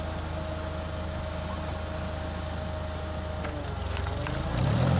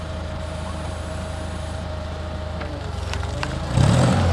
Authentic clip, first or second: first